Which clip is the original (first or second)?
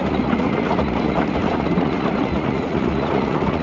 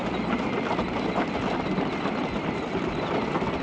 second